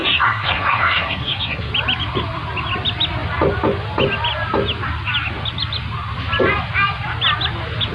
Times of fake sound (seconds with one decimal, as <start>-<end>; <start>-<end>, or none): 0.0-1.7